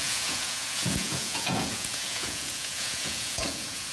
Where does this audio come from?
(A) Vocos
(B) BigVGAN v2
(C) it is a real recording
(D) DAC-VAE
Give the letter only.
A